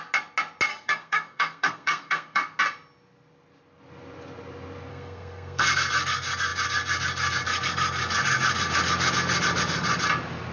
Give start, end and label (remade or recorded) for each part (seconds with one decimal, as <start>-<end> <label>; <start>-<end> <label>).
0.0-0.7 recorded; 0.7-2.6 remade; 2.6-4.9 recorded; 4.9-5.9 remade; 5.9-10.5 recorded